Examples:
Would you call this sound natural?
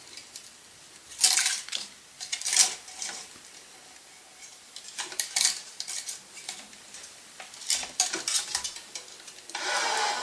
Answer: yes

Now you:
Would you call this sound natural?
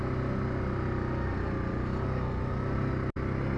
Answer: yes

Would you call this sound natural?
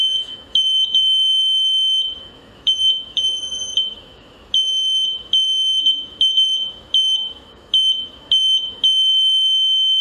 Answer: no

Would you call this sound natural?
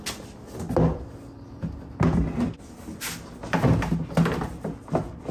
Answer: yes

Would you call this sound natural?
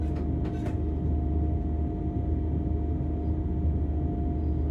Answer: yes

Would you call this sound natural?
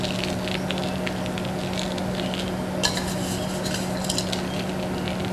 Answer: yes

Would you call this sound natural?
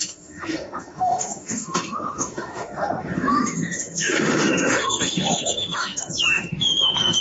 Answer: no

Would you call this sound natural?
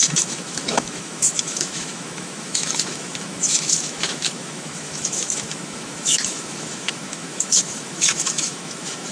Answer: no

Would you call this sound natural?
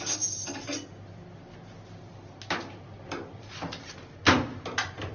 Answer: yes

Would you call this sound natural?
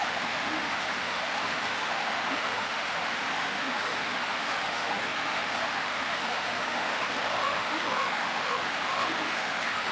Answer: no